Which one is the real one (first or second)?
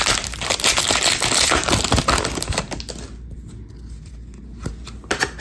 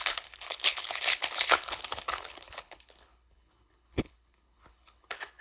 first